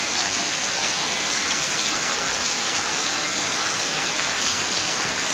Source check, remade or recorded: remade